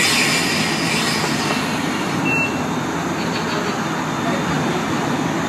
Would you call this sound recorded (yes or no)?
yes